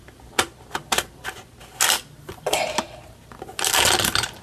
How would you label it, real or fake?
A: real